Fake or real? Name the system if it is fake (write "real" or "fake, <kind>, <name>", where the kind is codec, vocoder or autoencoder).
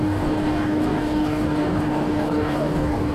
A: fake, codec, DAC